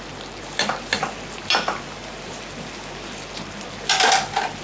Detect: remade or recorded recorded